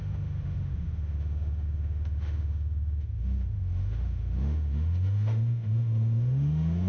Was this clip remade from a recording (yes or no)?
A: yes